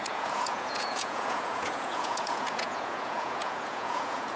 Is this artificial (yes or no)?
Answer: yes